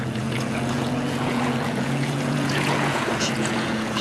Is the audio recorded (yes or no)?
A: no